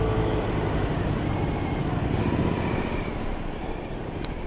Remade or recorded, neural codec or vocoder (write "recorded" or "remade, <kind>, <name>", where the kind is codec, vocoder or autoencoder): recorded